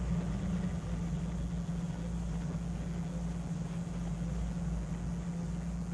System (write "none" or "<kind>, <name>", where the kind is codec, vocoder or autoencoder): none